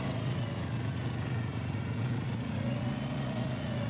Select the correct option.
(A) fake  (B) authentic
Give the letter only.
A